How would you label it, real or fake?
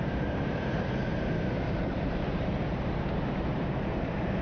fake